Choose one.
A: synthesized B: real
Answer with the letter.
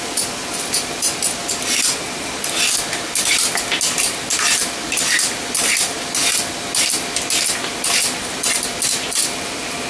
B